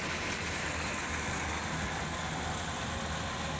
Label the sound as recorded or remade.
recorded